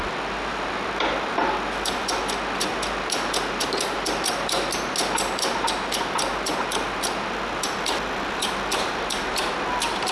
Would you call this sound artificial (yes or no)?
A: no